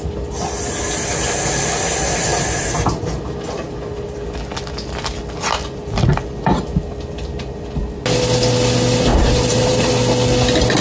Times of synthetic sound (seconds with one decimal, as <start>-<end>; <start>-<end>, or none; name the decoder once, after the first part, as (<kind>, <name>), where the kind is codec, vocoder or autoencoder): 2.3-3.2 (vocoder, BigVGAN v2); 9.1-9.9